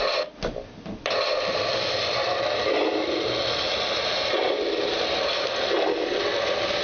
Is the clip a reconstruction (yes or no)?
no